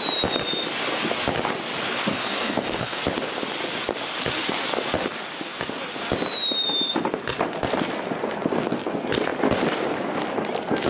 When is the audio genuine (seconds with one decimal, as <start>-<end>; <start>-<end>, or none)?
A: 0.0-2.1; 3.0-10.9